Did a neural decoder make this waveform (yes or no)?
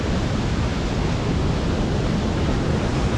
no